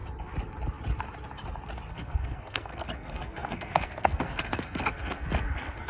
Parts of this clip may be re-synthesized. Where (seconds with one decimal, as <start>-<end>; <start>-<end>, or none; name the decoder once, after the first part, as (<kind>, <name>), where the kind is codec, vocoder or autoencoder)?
1.9-5.9 (codec, SNAC)